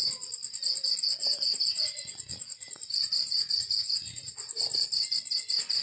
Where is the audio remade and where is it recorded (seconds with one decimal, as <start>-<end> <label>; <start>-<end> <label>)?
0.0-1.2 recorded; 1.2-4.7 remade; 4.7-5.8 recorded